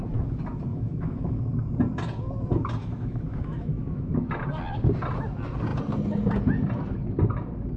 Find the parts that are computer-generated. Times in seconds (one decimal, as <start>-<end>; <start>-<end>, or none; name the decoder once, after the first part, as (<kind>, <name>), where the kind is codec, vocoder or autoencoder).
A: 0.7-1.4 (autoencoder, DAC-VAE); 2.8-4.3